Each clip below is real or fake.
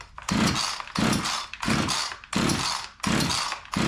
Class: real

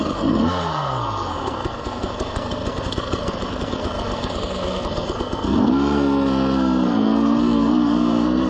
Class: fake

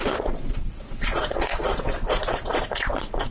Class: fake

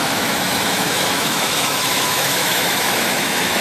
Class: fake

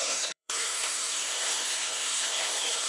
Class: fake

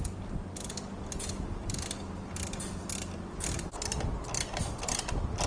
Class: real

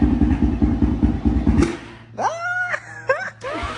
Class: real